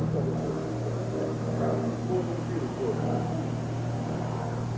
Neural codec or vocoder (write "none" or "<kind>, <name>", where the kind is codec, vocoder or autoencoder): none